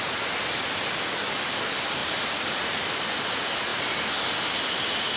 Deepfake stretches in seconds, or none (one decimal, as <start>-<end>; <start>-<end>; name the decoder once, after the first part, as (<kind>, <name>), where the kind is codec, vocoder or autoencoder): 2.0-3.0 (vocoder, BigVGAN v2); 3.7-4.6